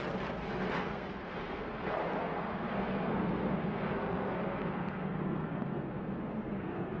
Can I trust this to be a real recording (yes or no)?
no